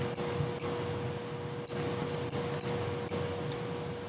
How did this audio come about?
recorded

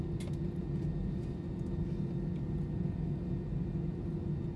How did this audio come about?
recorded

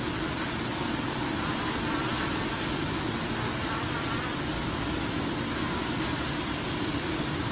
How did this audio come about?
recorded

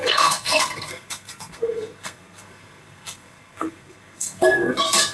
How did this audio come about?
remade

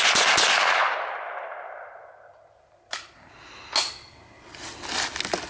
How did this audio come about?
recorded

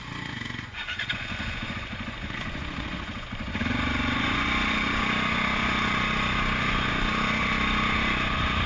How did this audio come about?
remade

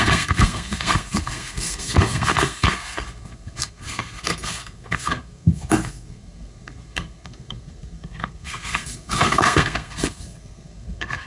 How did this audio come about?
remade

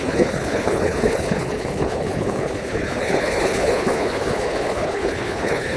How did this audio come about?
remade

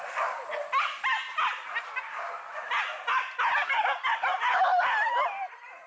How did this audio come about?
recorded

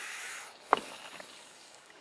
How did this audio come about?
remade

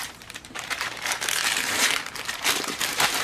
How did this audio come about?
remade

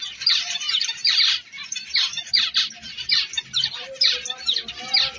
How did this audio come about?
recorded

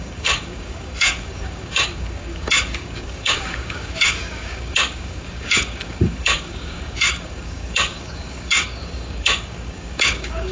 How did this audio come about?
remade